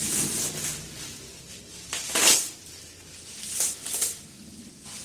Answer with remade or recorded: recorded